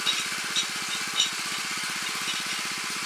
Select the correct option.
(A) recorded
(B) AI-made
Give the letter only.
A